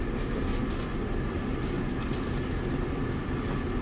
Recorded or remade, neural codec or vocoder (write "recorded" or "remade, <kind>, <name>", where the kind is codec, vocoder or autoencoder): recorded